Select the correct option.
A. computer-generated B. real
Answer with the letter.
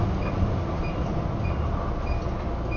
B